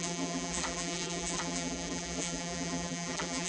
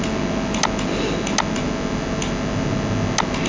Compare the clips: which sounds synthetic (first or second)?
first